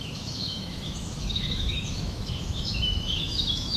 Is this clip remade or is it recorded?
remade